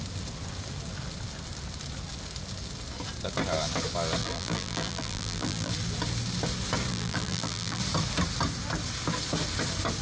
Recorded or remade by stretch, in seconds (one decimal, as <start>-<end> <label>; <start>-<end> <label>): 0.0-4.2 recorded; 4.2-5.7 remade; 5.7-6.9 recorded; 6.9-7.8 remade; 7.8-10.0 recorded